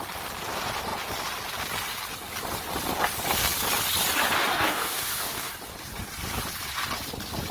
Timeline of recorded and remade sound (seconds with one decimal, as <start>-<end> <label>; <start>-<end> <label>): 0.0-4.4 recorded; 4.4-5.5 remade; 5.5-7.5 recorded